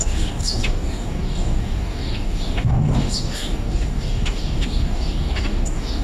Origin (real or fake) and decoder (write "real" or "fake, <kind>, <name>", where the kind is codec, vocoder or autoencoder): fake, codec, DAC